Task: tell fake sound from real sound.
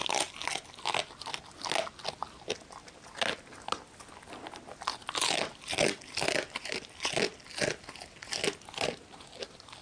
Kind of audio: real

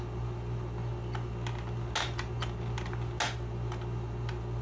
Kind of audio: real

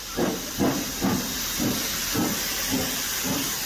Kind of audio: fake